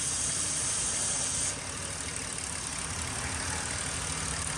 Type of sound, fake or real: real